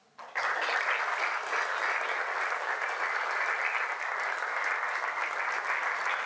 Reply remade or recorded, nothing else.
recorded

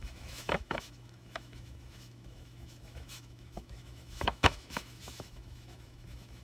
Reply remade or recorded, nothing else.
remade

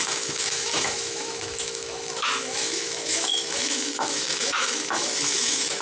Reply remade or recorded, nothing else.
remade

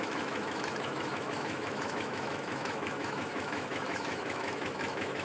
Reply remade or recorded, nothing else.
remade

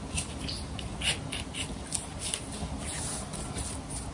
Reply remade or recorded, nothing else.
recorded